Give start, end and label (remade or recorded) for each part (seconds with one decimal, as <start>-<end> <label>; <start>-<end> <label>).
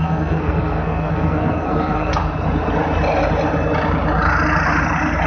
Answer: 0.0-2.1 remade; 2.1-5.3 recorded